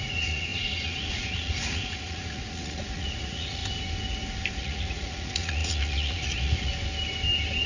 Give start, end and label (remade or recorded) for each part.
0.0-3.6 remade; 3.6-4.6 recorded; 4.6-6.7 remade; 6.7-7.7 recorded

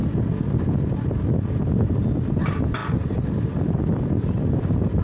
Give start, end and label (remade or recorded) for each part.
0.0-5.0 recorded

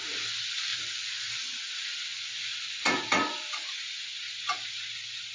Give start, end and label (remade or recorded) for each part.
0.0-0.7 recorded; 0.7-1.3 remade; 1.3-2.5 recorded; 2.5-5.3 remade

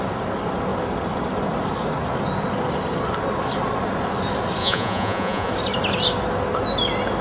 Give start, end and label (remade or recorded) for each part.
0.0-4.6 recorded; 4.6-5.5 remade; 5.5-7.2 recorded

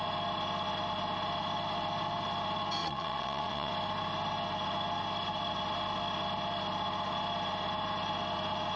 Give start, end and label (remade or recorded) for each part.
0.0-2.8 recorded; 2.8-3.7 remade; 3.7-8.8 recorded

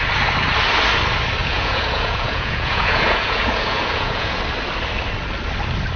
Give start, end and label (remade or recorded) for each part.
0.0-1.4 recorded; 1.4-4.4 remade; 4.4-6.0 recorded

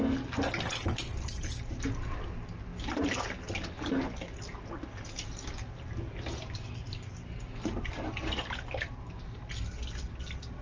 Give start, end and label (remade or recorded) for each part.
0.0-10.6 recorded